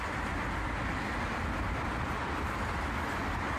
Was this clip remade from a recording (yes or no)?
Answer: no